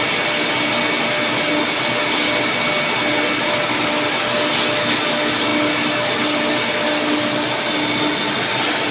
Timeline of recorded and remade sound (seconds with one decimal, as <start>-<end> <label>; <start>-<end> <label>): 0.0-8.9 recorded